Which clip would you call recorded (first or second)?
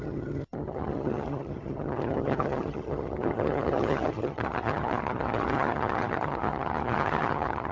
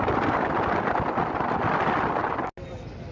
second